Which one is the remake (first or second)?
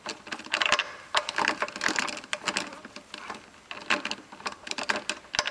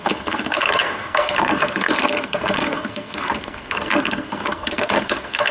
second